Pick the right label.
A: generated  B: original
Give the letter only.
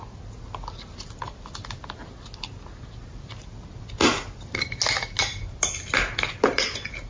B